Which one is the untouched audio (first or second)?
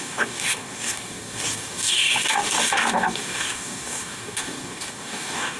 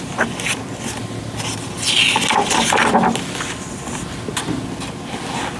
second